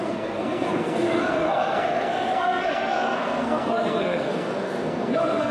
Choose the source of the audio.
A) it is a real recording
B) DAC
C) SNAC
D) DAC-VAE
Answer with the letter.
C